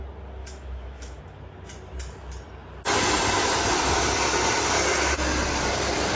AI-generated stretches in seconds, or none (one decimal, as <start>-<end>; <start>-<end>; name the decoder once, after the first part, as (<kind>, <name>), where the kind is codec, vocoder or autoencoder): 0.4-1.2 (autoencoder, DAC-VAE)